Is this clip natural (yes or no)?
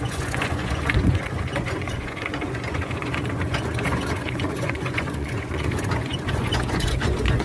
no